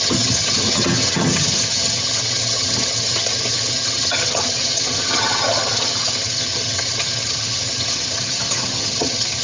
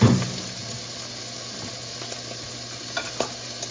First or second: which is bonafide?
second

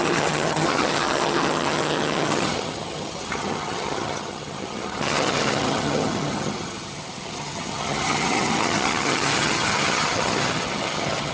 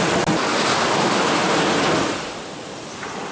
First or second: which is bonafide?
second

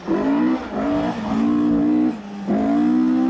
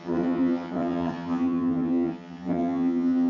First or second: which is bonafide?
first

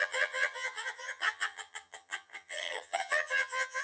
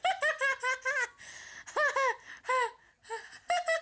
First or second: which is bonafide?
second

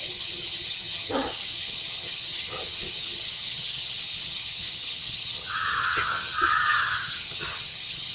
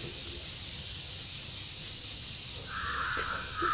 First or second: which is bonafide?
second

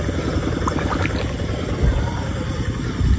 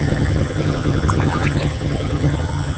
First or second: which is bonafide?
first